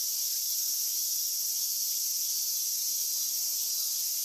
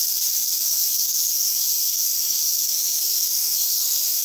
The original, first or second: first